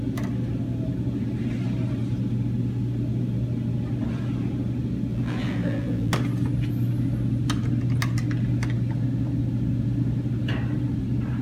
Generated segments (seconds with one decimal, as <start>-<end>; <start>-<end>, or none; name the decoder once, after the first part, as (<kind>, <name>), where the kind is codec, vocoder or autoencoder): 5.1-6.1 (vocoder, BigVGAN v2)